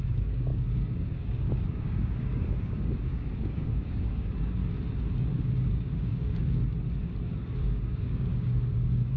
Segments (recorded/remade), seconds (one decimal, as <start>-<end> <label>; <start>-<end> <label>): 0.0-4.6 remade; 4.6-5.4 recorded; 5.4-6.6 remade; 6.6-7.6 recorded; 7.6-9.2 remade